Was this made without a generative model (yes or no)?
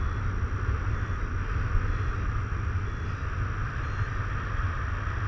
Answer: yes